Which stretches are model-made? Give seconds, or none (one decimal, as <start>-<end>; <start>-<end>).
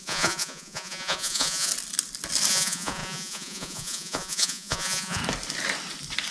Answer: 0.0-1.7; 2.5-5.2